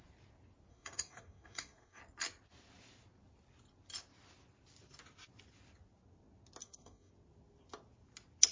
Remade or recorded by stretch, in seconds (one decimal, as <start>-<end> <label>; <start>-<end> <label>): 0.0-0.7 recorded; 0.7-2.0 remade; 2.0-6.6 recorded; 6.6-7.1 remade; 7.1-8.5 recorded